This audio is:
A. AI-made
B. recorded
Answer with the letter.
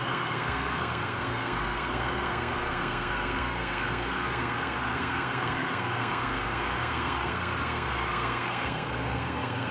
A